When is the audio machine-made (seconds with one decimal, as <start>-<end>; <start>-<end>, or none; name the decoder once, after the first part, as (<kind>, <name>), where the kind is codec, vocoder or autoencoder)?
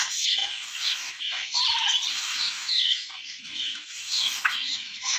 0.0-1.6 (codec, DAC); 2.1-5.2